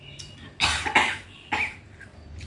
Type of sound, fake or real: real